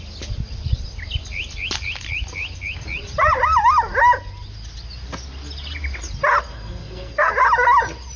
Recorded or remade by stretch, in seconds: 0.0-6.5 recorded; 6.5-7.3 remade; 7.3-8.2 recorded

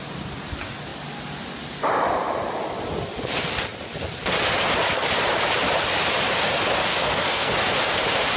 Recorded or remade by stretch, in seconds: 0.0-6.9 recorded; 6.9-7.5 remade; 7.5-8.4 recorded